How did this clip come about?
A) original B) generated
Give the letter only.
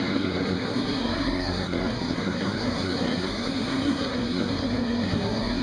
B